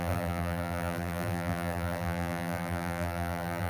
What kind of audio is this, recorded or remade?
remade